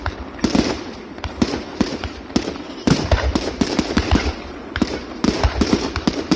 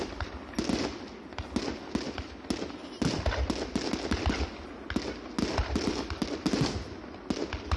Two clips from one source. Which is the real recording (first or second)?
second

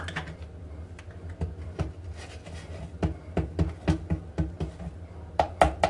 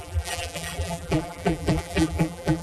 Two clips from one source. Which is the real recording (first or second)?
first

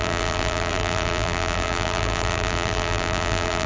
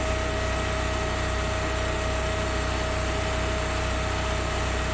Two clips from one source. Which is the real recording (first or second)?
second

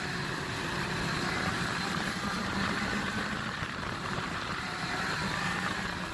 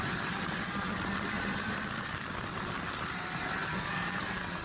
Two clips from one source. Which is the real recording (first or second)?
second